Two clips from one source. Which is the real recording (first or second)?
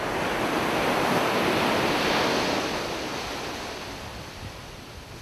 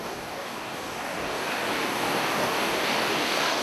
first